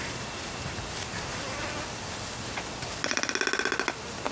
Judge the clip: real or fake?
real